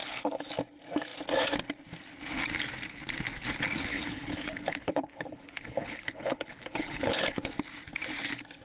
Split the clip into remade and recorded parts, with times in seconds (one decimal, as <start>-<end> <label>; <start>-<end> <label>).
0.0-0.5 remade; 0.5-3.9 recorded; 3.9-7.5 remade; 7.5-8.6 recorded